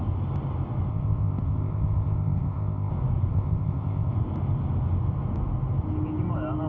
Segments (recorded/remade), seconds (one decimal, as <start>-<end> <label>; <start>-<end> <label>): 0.0-0.9 recorded; 0.9-2.9 remade; 2.9-3.3 recorded; 3.3-4.1 remade; 4.1-6.7 recorded